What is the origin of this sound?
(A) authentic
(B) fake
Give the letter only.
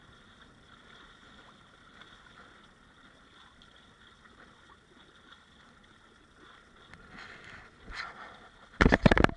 A